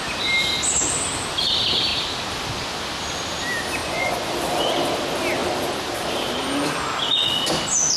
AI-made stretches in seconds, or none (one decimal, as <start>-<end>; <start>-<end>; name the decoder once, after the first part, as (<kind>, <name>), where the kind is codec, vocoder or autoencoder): 3.8-4.3 (vocoder, Vocos)